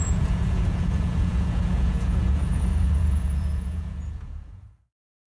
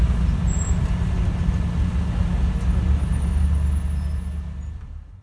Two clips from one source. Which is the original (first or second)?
second